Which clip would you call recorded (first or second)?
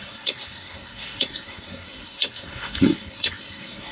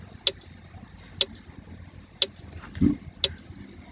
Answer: second